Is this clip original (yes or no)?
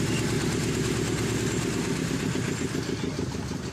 yes